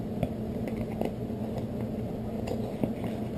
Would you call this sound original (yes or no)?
yes